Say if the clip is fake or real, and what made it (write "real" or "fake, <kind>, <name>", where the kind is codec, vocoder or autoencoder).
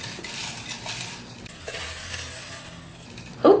real